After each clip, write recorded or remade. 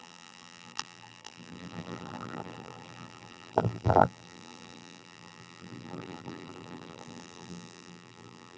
remade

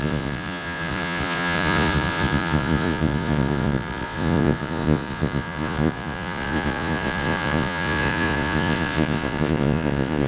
remade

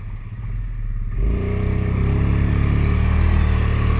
recorded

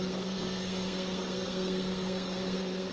remade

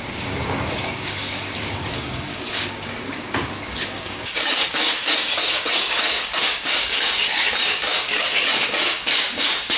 remade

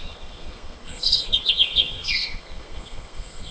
remade